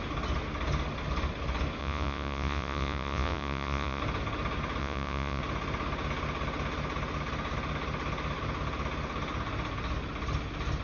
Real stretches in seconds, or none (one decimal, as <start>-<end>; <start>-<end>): 0.0-1.8; 4.0-4.8; 5.4-10.8